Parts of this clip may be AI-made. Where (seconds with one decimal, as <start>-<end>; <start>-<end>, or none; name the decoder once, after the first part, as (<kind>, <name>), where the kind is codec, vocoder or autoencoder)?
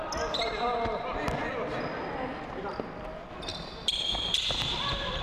none